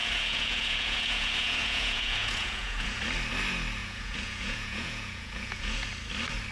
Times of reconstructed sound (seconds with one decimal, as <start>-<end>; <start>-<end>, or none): 0.0-3.0; 3.8-5.9